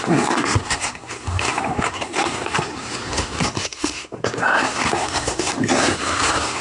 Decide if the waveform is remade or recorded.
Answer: remade